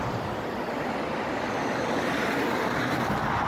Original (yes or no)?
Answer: no